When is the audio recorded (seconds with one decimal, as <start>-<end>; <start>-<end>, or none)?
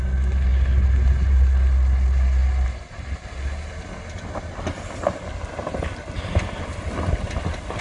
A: 0.0-7.8